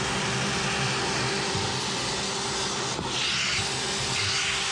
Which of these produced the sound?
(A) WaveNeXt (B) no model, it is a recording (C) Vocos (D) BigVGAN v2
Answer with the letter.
B